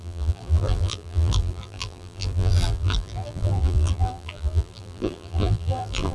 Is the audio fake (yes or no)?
yes